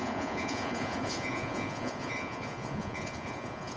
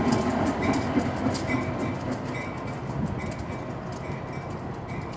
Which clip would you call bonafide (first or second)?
second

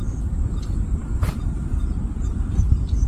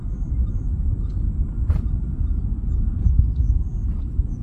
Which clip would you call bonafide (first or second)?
second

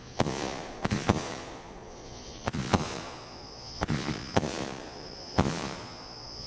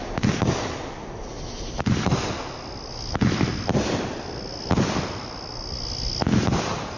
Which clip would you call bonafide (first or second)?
second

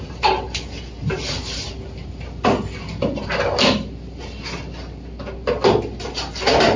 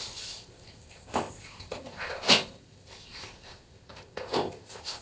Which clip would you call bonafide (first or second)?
first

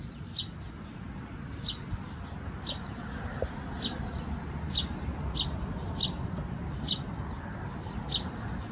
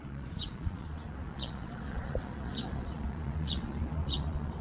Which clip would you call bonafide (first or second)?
first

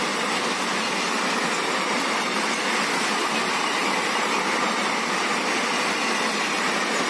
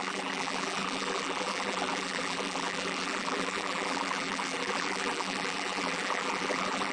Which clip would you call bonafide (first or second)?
first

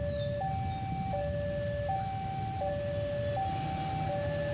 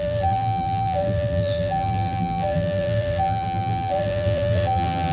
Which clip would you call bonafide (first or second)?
first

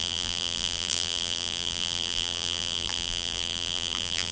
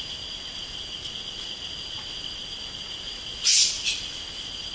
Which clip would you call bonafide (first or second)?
second